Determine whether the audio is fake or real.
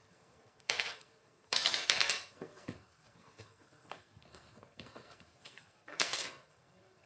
fake